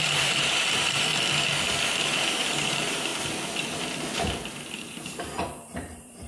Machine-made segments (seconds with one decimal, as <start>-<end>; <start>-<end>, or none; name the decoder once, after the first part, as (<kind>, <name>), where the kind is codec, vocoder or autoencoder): 0.0-1.1 (vocoder, BigVGAN v2); 1.9-3.1; 4.7-6.3